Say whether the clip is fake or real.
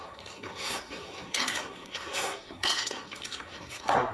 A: fake